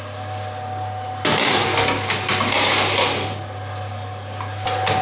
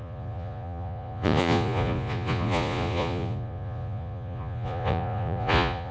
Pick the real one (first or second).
first